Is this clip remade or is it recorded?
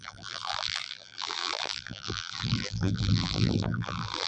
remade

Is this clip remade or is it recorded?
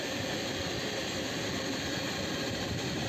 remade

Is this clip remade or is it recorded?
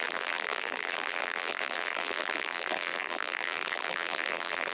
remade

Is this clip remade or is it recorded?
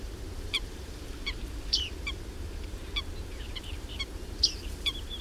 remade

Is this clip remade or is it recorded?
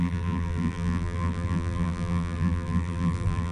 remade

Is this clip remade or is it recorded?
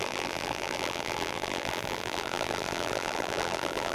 remade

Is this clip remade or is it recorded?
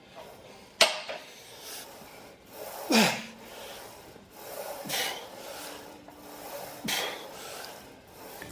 recorded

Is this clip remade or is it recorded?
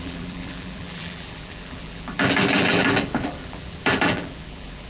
remade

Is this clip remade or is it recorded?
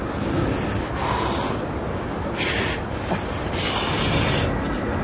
recorded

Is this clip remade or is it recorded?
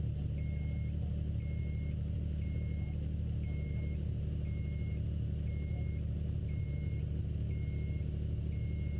remade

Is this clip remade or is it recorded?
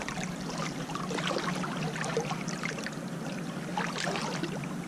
recorded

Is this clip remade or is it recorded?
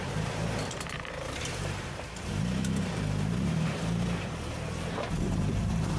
remade